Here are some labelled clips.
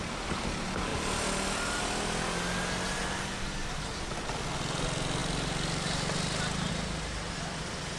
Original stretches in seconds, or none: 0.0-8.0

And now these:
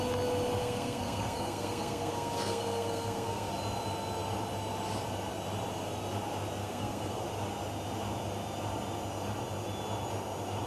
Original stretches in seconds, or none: 0.0-0.6; 3.5-6.6; 7.2-10.7

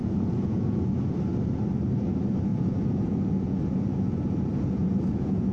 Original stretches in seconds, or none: 0.9-2.5

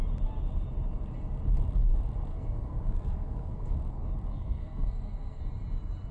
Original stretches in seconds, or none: 0.0-2.3; 3.7-4.3; 5.4-6.1

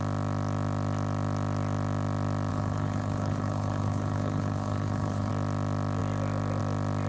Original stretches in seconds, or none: 0.0-2.5; 5.3-7.1

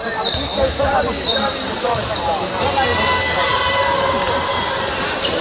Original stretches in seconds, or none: none

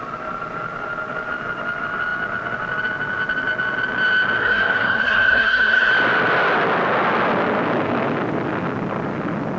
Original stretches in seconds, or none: 0.0-4.4; 5.9-9.6

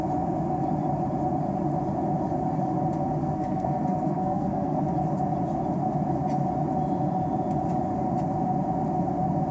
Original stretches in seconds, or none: 0.0-3.2; 4.8-9.5